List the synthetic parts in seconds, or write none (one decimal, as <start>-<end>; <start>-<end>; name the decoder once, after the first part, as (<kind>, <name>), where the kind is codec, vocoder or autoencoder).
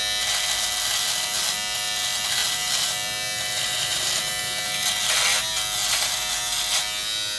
none